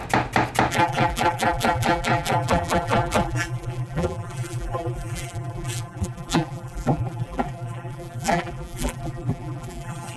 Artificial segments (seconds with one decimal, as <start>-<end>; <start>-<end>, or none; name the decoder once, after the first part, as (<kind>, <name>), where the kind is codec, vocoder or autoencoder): 0.7-10.2 (vocoder, BigVGAN v2)